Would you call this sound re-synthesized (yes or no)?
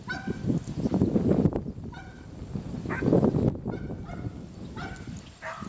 no